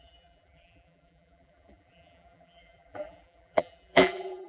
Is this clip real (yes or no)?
no